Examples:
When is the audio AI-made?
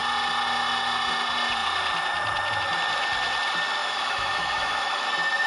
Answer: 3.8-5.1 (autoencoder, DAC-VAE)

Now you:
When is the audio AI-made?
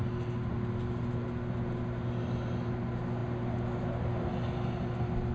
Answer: none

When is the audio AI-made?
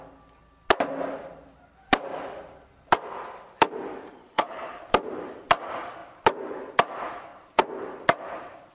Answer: 4.2-4.8 (codec, HILCodec)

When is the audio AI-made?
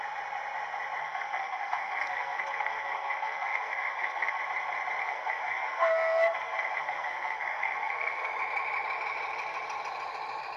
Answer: 1.0-4.4 (codec, SNAC); 5.0-8.3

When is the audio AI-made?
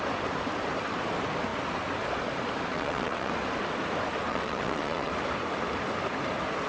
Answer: 2.7-3.3 (vocoder, WaveNeXt); 4.3-5.1